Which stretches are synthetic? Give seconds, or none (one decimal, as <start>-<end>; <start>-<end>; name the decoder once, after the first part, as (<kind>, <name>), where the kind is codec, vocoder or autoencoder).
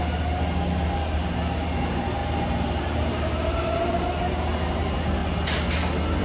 none